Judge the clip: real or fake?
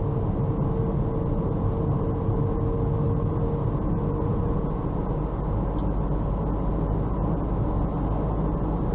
real